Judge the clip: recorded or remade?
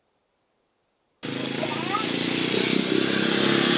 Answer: recorded